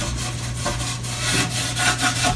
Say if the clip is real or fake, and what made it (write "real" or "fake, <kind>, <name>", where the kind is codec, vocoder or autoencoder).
real